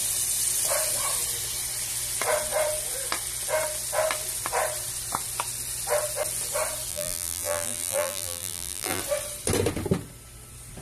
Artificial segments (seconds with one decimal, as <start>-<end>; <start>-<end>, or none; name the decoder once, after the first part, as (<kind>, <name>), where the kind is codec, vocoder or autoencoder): 6.9-9.0 (vocoder, BigVGAN v2)

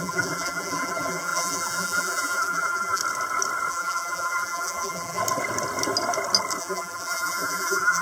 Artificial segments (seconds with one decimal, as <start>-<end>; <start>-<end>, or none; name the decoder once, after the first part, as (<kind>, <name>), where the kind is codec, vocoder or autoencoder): 0.0-3.0 (vocoder, BigVGAN v2); 3.7-5.2; 6.6-8.0

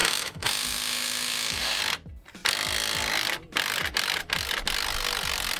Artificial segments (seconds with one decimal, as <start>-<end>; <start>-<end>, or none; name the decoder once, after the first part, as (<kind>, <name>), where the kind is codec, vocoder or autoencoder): 0.0-1.8 (autoencoder, DAC-VAE)

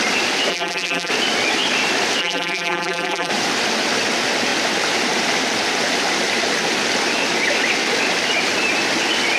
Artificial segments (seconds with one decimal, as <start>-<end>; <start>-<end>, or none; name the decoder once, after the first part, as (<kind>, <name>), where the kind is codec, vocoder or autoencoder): 0.5-1.1 (vocoder, BigVGAN v2); 2.2-3.3

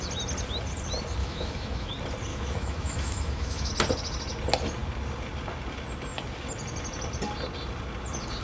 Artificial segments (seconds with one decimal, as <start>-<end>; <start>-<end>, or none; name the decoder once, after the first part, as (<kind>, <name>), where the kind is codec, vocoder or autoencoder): 1.2-1.9 (autoencoder, DAC-VAE); 2.3-3.7

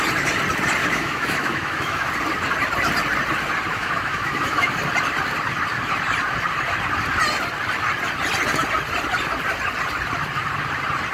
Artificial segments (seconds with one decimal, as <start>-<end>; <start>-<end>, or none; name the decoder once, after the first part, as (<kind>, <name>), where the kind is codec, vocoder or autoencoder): 0.8-2.1 (autoencoder, DAC-VAE); 3.7-4.7